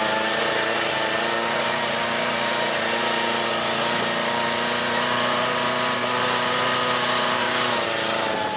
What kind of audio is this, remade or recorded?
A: recorded